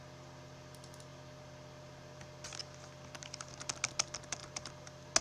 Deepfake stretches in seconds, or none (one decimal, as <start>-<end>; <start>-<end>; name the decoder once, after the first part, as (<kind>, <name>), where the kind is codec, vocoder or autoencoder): none